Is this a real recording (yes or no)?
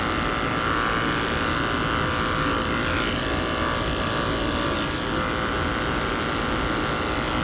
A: yes